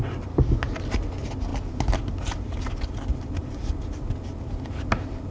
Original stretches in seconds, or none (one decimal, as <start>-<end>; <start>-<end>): 0.0-5.3